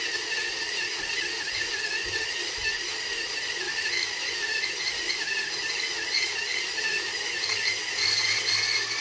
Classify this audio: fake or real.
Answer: real